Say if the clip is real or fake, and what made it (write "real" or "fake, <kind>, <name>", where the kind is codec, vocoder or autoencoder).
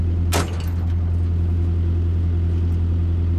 real